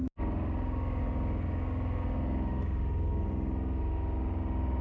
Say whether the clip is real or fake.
real